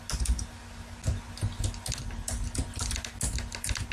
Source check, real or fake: real